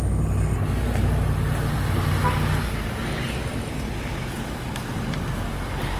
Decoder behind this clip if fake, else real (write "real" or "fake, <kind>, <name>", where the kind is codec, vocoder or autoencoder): real